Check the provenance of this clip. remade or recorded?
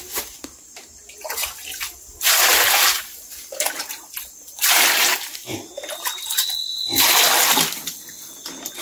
recorded